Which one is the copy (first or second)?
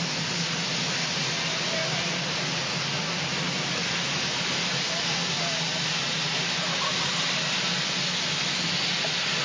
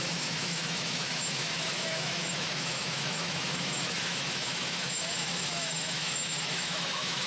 second